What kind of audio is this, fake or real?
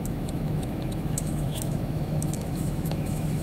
fake